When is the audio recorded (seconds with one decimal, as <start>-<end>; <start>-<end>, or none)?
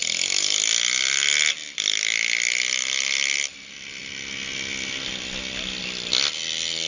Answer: 0.0-1.5; 4.0-5.8